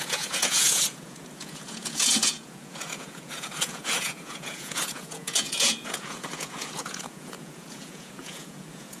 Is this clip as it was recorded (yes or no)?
no